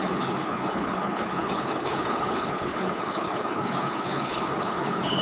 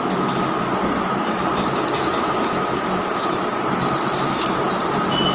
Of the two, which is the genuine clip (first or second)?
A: second